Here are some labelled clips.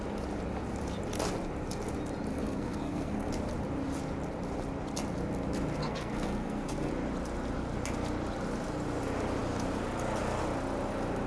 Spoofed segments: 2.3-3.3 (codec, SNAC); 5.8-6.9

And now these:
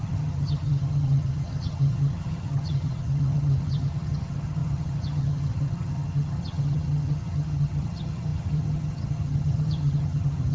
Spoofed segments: 0.0-10.5 (vocoder, HiFi-GAN)